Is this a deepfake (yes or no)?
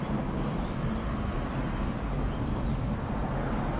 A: no